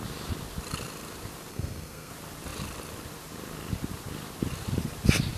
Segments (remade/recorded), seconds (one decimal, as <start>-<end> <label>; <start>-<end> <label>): 0.0-1.5 recorded; 1.5-2.1 remade; 2.1-5.4 recorded